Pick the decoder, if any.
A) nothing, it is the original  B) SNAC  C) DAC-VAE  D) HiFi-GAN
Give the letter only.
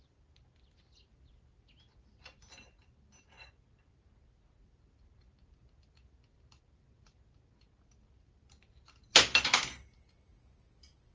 A